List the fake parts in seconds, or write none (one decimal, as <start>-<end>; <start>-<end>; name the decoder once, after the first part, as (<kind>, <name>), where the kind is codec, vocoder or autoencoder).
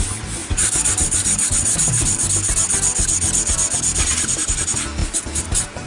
0.4-2.2 (vocoder, BigVGAN v2); 5.0-5.9